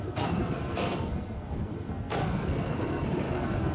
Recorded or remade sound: remade